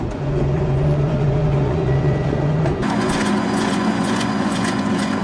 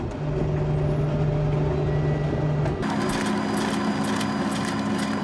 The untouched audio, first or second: second